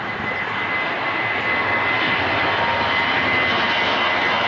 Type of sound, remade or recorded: recorded